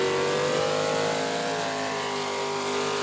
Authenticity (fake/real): real